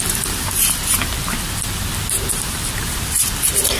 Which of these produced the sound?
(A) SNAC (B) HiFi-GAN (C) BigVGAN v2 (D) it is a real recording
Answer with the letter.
C